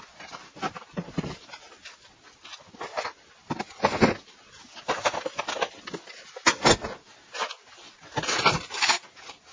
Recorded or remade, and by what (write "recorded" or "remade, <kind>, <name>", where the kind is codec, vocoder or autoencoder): recorded